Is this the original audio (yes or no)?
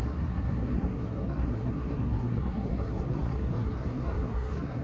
no